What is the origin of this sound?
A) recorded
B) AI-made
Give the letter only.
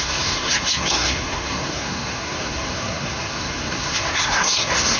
B